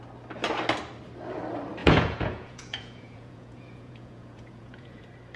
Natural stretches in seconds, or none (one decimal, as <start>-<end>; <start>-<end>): 0.0-1.8; 5.0-5.4